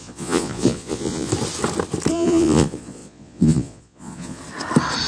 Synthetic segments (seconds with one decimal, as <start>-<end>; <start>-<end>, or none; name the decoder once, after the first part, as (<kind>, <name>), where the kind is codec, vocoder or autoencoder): 0.0-1.3 (vocoder, Vocos); 2.1-4.4